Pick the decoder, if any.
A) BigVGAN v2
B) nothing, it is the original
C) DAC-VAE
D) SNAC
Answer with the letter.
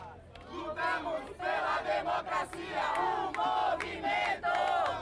B